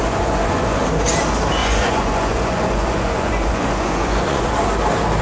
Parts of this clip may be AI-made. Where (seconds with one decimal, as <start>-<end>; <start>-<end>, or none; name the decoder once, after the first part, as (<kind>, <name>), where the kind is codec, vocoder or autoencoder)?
0.0-0.8 (vocoder, Vocos); 1.6-4.5